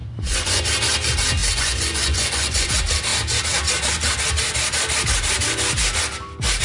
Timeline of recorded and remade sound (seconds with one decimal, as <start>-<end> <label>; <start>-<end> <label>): 0.0-0.6 remade; 0.6-1.4 recorded; 1.4-2.7 remade; 2.7-6.6 recorded